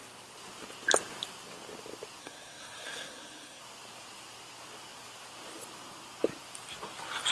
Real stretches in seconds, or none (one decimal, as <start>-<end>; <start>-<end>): 0.0-2.2; 3.6-7.3